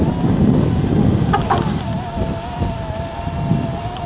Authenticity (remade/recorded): recorded